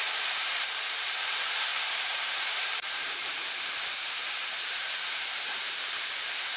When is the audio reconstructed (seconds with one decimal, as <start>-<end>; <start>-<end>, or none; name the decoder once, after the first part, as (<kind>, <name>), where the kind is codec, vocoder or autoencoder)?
0.0-1.7 (vocoder, BigVGAN v2); 2.4-6.6